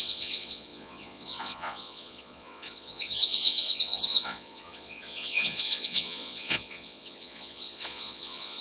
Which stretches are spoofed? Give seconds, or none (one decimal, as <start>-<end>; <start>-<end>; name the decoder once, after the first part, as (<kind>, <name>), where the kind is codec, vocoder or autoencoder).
0.0-8.6 (vocoder, Vocos)